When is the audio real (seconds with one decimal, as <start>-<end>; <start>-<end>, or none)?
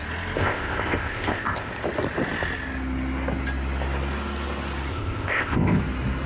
0.0-0.4; 1.7-4.9; 5.8-6.3